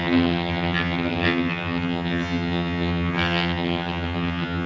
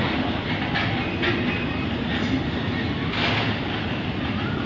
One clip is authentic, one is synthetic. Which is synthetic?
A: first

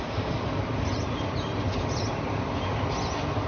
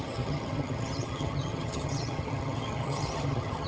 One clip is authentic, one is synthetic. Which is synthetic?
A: second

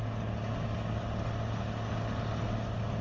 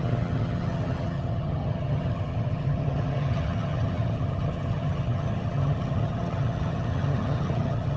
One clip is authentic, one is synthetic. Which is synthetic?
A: second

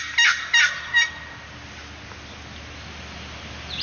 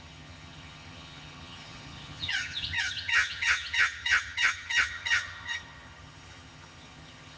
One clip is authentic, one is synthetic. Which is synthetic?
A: second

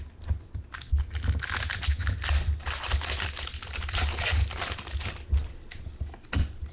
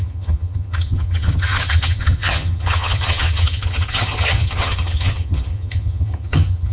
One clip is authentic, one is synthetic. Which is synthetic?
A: second